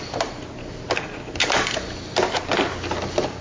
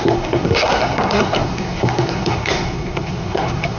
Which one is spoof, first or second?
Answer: second